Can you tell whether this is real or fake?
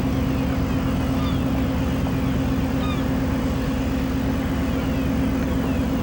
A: real